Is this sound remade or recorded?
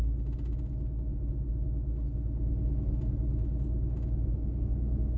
recorded